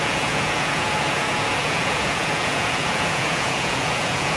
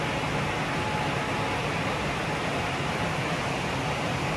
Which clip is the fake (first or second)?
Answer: first